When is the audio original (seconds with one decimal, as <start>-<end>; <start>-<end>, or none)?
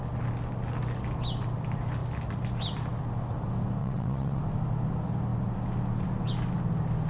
0.0-3.8; 4.4-7.1